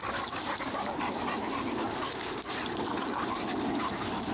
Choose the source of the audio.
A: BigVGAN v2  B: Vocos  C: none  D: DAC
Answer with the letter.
C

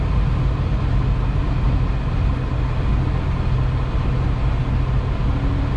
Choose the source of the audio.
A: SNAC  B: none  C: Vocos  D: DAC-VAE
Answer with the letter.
B